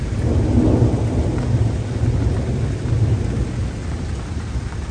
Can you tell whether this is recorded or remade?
recorded